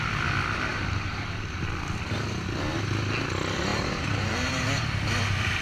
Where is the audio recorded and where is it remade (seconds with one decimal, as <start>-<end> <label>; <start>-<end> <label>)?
0.0-0.7 recorded; 0.7-1.6 remade; 1.6-3.7 recorded; 3.7-5.1 remade; 5.1-5.6 recorded